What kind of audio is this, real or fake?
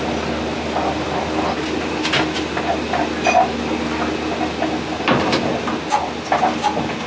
real